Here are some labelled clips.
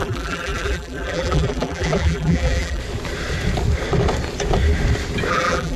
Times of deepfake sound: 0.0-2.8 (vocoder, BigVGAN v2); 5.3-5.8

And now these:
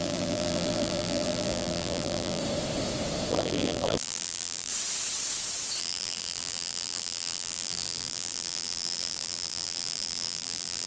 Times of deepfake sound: 0.0-2.4 (vocoder, BigVGAN v2); 3.3-4.7; 5.8-10.9

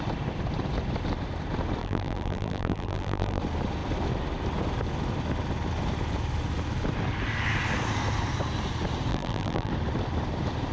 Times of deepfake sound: 1.8-3.4 (vocoder, BigVGAN v2); 9.1-9.7

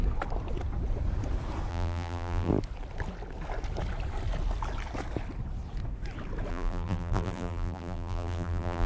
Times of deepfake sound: 1.7-2.5 (vocoder, BigVGAN v2); 6.5-8.9

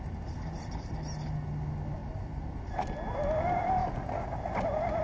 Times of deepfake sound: 2.0-2.7 (vocoder, BigVGAN v2)

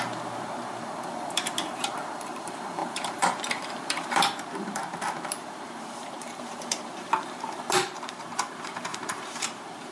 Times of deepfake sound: 0.0-9.9 (vocoder, BigVGAN v2)

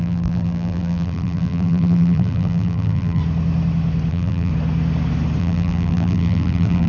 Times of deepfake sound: 0.0-3.2 (vocoder, BigVGAN v2); 4.1-4.5; 5.4-6.9